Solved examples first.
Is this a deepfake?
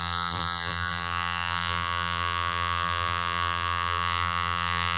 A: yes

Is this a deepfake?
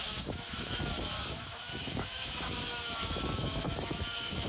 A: yes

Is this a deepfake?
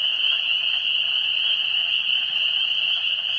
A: no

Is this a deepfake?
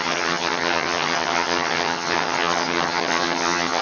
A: yes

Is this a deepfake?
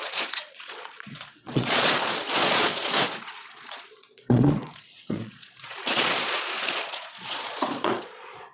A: yes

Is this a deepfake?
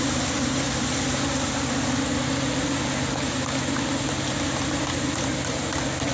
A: no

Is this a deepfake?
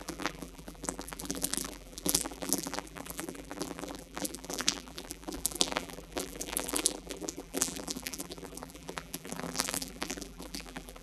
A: yes